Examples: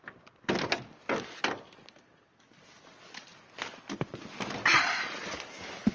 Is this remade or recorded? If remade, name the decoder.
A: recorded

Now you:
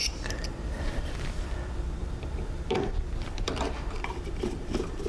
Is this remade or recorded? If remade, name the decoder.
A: remade, vocoder, BigVGAN v2